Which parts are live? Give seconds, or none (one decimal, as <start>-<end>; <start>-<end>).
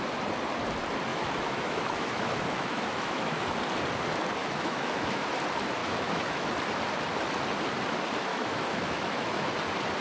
0.0-1.1; 3.5-4.4; 5.3-5.8; 6.5-8.3; 9.5-10.0